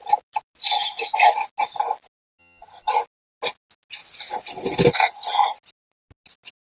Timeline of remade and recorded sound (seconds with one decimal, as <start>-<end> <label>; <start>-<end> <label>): 0.0-2.4 recorded; 2.4-3.0 remade; 3.0-6.7 recorded